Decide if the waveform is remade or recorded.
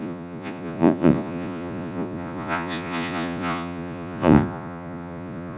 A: remade